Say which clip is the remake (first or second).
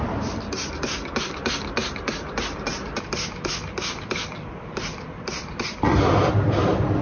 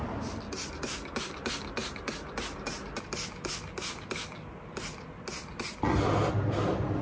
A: first